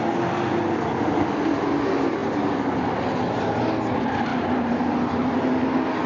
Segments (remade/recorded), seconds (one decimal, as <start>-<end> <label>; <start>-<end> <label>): 0.0-4.3 recorded; 4.3-5.0 remade; 5.0-6.1 recorded